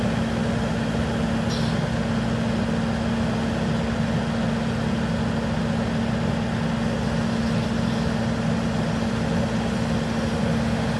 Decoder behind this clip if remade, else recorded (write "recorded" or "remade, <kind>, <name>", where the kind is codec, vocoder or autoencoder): recorded